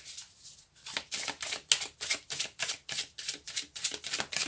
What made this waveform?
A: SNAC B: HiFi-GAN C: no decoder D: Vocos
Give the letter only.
C